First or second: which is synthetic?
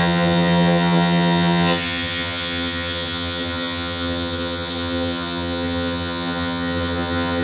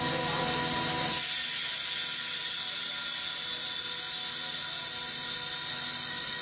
first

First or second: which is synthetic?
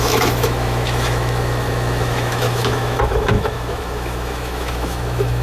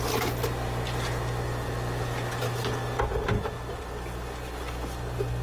first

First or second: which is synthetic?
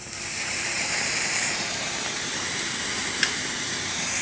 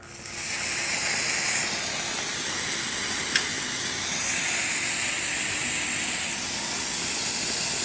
first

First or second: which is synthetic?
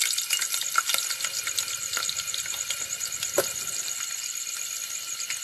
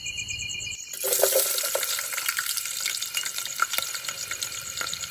second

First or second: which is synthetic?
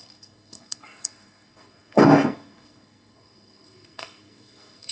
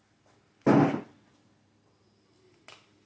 first